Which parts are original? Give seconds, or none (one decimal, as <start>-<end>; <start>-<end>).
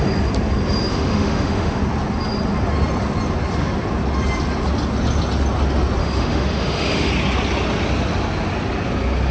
0.0-0.9; 1.8-6.0; 7.1-9.3